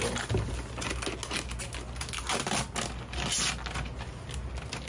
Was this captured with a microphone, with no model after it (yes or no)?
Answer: yes